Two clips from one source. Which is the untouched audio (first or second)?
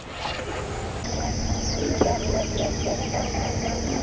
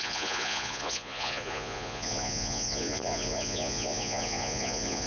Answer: first